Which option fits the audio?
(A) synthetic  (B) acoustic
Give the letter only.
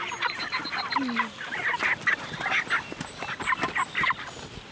B